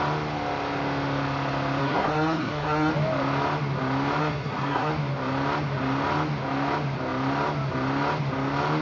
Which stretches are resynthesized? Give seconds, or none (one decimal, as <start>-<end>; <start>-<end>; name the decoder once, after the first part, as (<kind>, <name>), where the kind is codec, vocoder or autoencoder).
1.8-2.9 (codec, SNAC); 4.2-4.9